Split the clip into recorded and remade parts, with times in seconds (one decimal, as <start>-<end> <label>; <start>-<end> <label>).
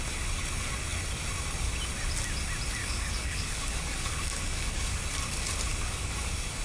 0.0-2.8 recorded; 2.8-5.0 remade; 5.0-5.7 recorded; 5.7-6.6 remade